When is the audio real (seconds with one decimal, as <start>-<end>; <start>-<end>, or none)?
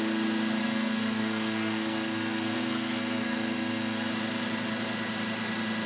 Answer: 0.0-0.6; 4.1-5.9